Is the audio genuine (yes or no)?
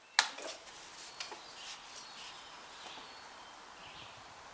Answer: yes